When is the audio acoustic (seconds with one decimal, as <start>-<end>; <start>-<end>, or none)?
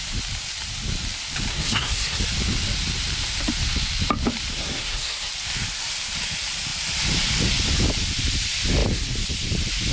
0.0-1.5; 2.2-4.5; 5.3-9.9